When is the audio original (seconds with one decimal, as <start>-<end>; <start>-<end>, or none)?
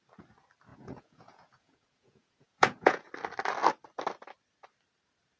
0.0-0.7; 3.1-5.4